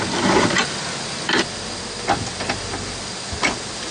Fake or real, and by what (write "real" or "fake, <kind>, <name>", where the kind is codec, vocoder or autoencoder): real